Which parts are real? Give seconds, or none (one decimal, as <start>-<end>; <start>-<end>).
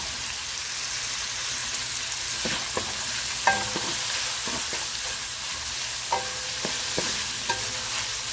0.0-8.3